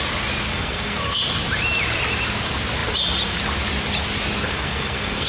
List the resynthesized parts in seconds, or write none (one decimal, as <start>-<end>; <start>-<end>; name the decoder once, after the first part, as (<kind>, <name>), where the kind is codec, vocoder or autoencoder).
0.5-1.2 (codec, SNAC); 4.5-5.3